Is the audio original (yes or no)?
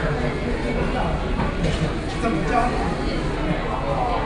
yes